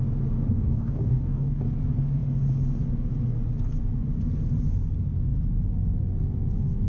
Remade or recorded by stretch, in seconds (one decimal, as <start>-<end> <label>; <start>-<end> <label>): 0.0-0.5 recorded; 0.5-1.6 remade; 1.6-6.9 recorded